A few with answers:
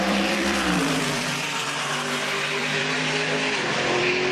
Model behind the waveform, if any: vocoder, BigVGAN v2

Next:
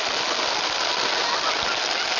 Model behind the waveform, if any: none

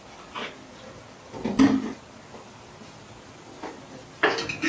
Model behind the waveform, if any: none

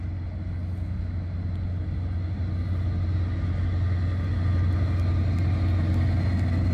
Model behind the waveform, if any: none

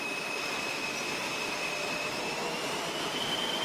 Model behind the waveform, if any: vocoder, BigVGAN v2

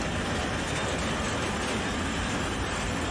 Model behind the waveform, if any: none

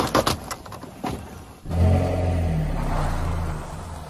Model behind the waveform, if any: none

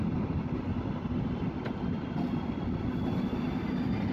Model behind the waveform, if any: none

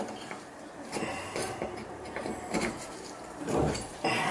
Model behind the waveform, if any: vocoder, BigVGAN v2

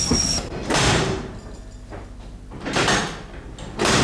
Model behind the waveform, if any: none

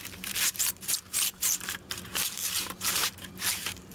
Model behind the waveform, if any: vocoder, BigVGAN v2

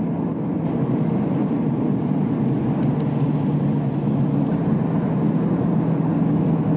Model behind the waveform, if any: none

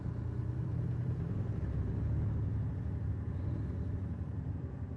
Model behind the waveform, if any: vocoder, BigVGAN v2